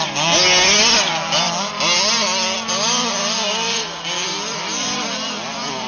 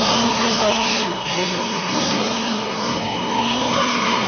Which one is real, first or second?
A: first